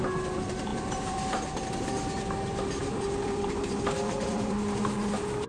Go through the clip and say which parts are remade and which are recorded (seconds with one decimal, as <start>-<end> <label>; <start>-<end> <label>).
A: 0.0-0.7 recorded; 0.7-2.1 remade; 2.1-2.8 recorded; 2.8-4.6 remade; 4.6-5.5 recorded